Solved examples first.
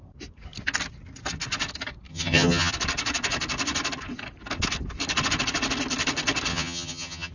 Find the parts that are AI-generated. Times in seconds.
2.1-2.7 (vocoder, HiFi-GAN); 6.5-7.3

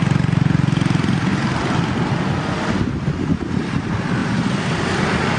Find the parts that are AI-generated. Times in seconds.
4.2-5.4 (vocoder, BigVGAN v2)

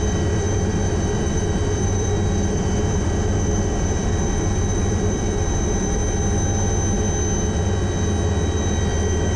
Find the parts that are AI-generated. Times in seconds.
0.0-6.0 (vocoder, BigVGAN v2); 8.8-9.4

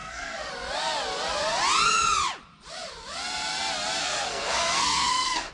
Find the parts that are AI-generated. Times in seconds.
0.0-0.5 (codec, SNAC); 4.0-5.5